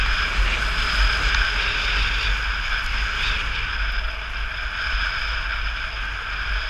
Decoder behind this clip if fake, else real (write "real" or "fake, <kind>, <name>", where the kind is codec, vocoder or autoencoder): real